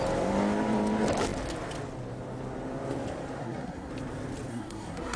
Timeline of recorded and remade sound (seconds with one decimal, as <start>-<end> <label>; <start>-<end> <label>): 0.0-3.4 recorded; 3.4-3.9 remade; 3.9-4.5 recorded; 4.5-5.2 remade